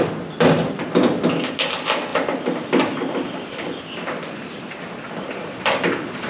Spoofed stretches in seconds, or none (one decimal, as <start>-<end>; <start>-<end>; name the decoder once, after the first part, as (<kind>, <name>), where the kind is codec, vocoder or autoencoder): none